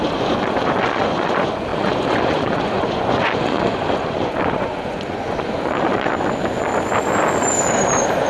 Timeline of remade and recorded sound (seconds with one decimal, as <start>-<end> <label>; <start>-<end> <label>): 0.0-6.7 remade; 6.7-8.3 recorded